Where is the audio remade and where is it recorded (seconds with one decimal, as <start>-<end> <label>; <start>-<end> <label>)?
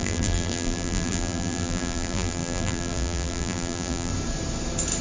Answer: 0.0-4.1 remade; 4.1-5.0 recorded